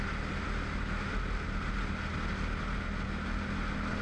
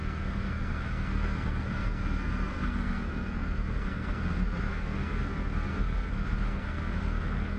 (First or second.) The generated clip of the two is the second